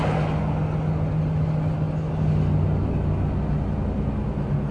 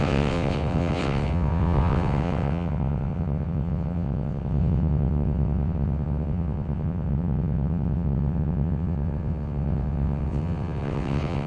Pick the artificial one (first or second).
second